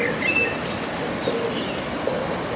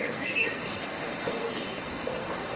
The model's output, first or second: second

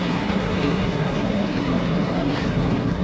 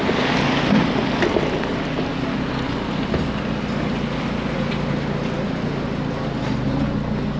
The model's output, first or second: first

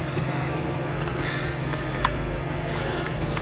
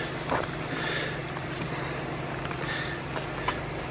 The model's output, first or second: first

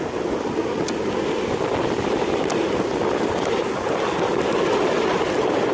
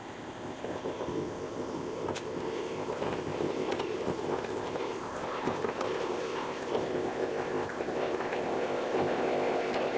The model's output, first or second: second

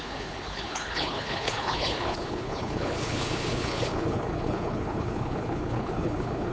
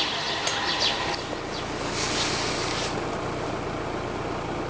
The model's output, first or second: first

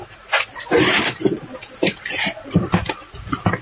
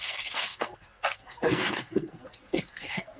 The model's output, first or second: second